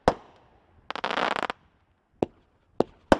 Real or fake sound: real